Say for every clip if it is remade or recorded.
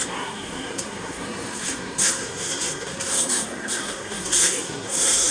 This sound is remade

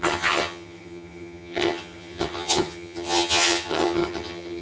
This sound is remade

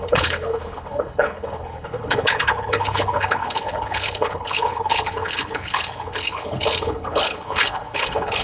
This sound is remade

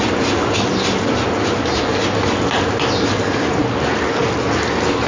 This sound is recorded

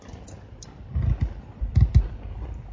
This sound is recorded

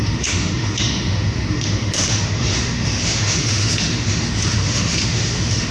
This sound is remade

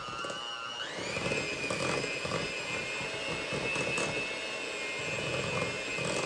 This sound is recorded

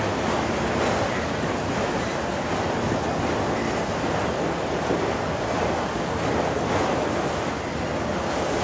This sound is recorded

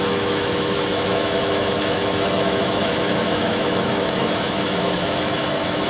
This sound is remade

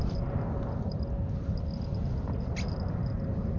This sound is recorded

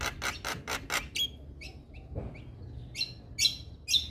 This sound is recorded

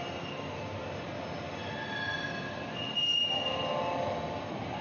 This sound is recorded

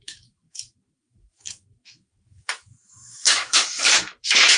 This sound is remade